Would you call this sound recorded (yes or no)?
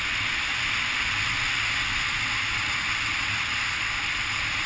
yes